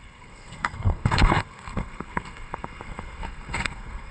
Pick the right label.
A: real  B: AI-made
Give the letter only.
B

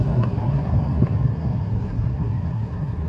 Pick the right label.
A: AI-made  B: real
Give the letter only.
A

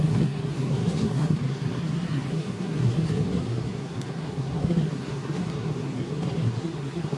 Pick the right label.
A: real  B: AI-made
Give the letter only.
B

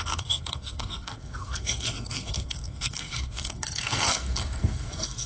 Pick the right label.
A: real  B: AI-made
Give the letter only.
B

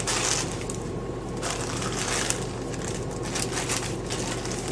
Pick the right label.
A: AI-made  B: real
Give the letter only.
B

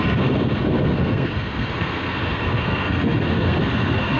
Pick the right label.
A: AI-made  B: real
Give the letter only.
A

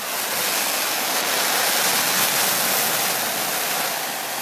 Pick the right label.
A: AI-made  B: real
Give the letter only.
B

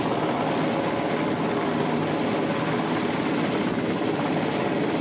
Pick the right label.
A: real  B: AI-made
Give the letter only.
A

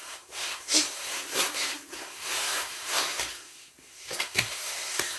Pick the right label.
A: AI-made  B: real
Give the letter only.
A